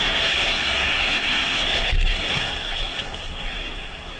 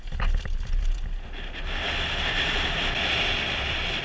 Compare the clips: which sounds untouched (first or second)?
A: second